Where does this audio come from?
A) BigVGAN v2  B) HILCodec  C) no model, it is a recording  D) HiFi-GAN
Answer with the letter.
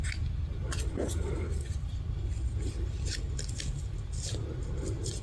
C